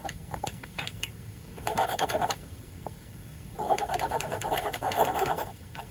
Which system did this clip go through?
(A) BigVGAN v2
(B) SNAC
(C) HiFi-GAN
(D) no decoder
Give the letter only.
B